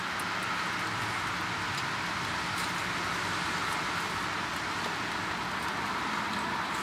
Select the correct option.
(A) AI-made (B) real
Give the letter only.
B